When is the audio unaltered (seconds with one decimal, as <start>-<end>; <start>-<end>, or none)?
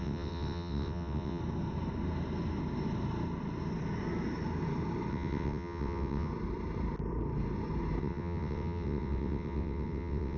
1.4-5.1; 6.3-8.0